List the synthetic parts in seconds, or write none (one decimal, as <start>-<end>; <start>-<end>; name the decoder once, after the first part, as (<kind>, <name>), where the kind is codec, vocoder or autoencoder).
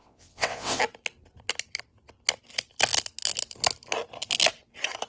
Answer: 0.0-0.8 (vocoder, WaveNeXt)